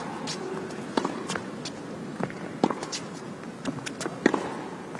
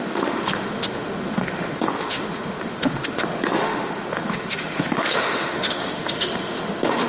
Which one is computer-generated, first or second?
second